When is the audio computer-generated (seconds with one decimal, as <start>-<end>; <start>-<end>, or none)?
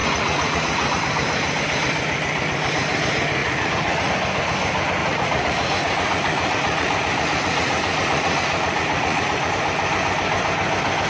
0.0-1.0; 3.4-4.1; 5.0-9.5